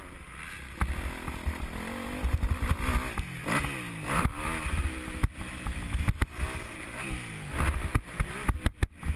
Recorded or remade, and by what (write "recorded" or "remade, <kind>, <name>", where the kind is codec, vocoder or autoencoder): recorded